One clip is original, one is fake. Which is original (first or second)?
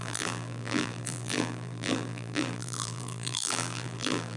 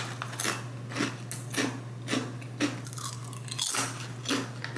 second